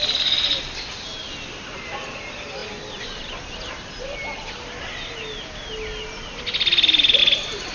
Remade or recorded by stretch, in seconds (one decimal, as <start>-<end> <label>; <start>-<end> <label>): 0.0-7.7 recorded